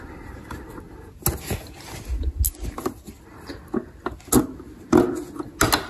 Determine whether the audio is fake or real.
real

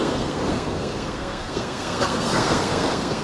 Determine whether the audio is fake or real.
fake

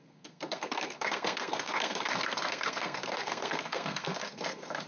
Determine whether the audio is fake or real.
fake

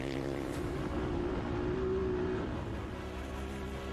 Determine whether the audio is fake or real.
real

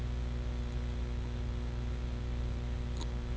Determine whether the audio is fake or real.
real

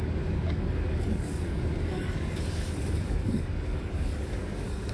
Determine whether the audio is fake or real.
fake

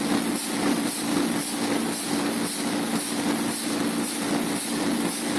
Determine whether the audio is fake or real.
real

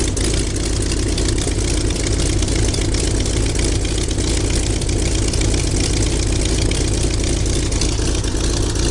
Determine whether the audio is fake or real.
real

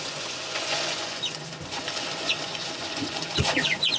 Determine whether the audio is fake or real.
fake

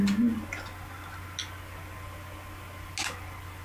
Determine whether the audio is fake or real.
real